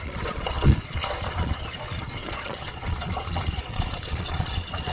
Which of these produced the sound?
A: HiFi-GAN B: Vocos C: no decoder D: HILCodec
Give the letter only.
B